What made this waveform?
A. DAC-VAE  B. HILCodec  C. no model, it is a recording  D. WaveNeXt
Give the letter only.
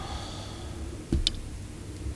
C